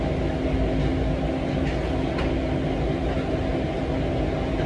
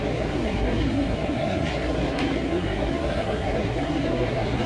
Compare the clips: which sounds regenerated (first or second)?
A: second